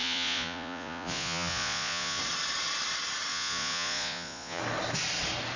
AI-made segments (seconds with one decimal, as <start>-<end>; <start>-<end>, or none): 0.0-2.2; 3.3-4.6